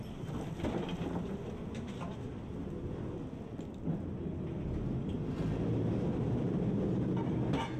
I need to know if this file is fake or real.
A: real